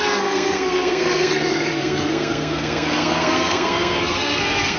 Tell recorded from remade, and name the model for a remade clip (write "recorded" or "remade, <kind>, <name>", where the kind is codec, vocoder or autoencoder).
remade, codec, SNAC